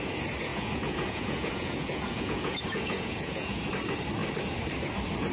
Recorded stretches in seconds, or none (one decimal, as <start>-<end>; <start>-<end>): 0.0-0.5; 3.7-5.3